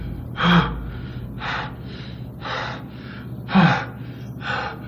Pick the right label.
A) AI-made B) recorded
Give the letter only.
B